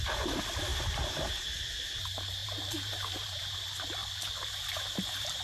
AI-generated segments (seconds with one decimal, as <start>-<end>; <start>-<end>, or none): 0.7-1.3; 2.4-3.4

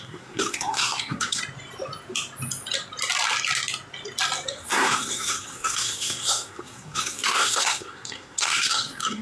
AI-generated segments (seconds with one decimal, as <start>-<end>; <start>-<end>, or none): 0.0-1.4; 4.5-9.2

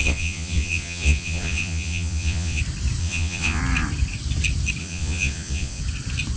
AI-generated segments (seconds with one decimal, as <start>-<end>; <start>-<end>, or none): 0.0-2.6; 3.0-3.6; 4.8-5.8

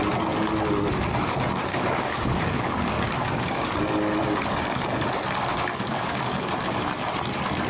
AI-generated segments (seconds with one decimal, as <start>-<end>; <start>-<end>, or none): 1.7-3.8; 5.9-6.5

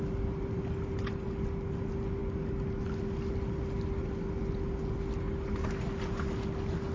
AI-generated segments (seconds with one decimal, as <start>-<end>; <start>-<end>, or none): none

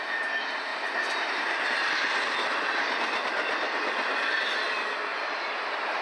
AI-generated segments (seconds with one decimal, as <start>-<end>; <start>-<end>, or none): 0.7-4.3; 5.1-6.0

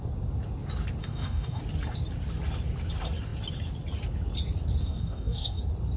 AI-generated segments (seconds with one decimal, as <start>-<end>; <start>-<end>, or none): 1.0-1.6; 4.8-5.6

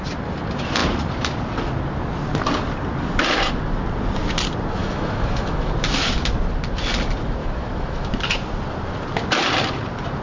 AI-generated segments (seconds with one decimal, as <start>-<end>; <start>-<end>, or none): 4.8-5.7; 7.4-8.1